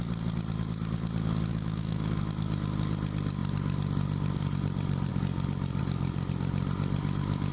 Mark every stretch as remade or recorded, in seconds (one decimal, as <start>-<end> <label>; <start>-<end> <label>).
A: 0.0-1.5 recorded; 1.5-2.2 remade; 2.2-7.5 recorded